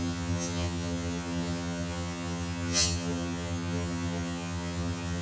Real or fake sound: fake